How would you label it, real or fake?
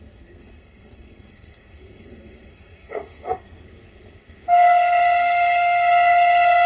fake